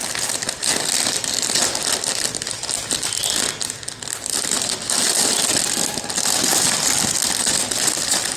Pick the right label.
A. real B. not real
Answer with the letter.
A